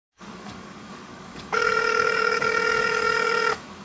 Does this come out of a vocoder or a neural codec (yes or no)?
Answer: yes